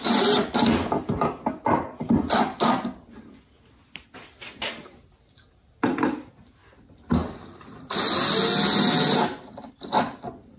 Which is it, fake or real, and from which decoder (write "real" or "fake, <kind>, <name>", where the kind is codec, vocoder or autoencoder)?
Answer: real